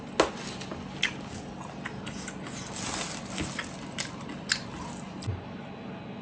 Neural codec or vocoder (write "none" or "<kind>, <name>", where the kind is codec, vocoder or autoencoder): none